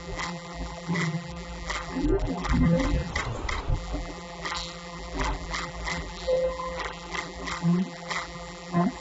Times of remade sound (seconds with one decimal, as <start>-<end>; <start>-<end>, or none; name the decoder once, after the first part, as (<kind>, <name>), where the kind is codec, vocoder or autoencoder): 0.0-3.1 (vocoder, BigVGAN v2); 3.7-9.0